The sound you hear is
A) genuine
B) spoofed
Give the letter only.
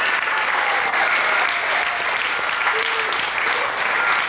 A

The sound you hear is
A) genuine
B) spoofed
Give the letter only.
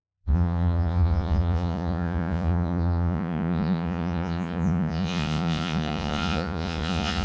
B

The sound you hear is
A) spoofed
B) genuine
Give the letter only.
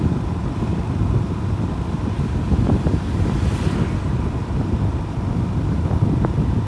A